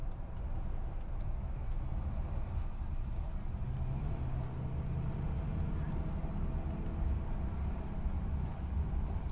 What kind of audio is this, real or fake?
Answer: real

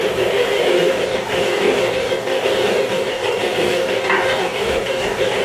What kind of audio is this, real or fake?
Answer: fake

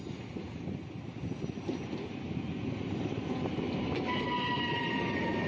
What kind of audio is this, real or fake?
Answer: real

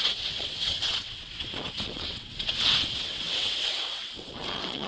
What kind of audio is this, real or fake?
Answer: fake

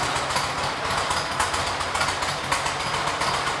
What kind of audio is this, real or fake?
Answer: real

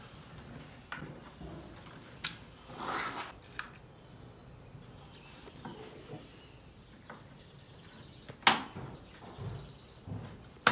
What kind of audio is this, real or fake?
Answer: real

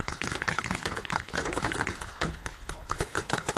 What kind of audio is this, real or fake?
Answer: fake